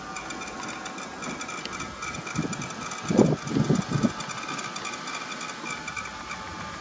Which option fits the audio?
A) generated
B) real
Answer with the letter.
B